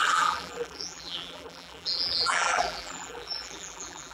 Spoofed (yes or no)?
yes